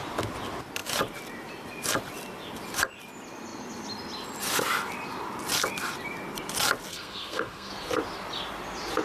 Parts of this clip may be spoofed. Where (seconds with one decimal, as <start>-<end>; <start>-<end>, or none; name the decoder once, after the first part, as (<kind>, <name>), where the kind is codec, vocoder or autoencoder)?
6.9-7.7 (codec, SNAC)